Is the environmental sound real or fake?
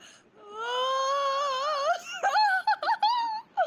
real